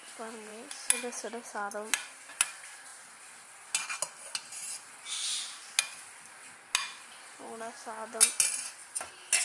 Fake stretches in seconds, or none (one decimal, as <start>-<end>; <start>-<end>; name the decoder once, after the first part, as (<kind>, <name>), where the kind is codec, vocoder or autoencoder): none